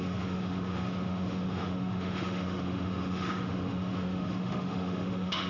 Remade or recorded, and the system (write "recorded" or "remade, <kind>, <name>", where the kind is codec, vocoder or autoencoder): remade, autoencoder, DAC-VAE